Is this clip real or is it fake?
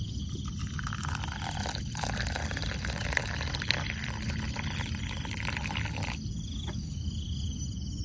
real